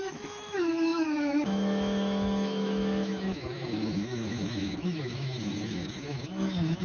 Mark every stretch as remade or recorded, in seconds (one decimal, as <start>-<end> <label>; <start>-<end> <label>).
0.0-6.8 remade